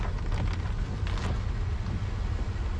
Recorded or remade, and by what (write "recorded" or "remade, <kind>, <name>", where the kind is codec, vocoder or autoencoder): recorded